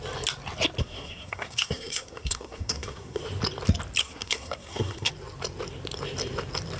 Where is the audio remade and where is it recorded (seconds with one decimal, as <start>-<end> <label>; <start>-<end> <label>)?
0.0-0.8 recorded; 0.8-3.2 remade; 3.2-4.0 recorded; 4.0-5.1 remade; 5.1-6.8 recorded